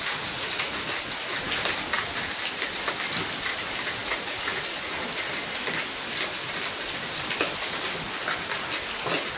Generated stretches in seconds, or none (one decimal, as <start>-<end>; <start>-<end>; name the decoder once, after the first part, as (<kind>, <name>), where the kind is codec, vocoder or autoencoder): 0.0-0.8 (vocoder, Vocos); 4.0-4.6